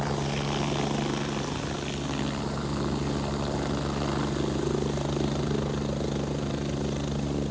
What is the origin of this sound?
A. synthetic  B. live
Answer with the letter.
B